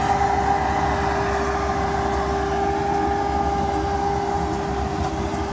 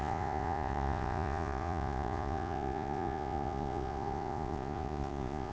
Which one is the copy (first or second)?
second